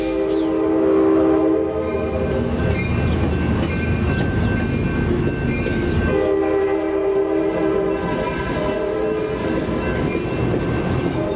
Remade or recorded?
recorded